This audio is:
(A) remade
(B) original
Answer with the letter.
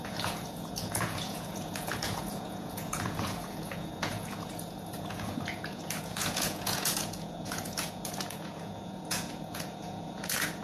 A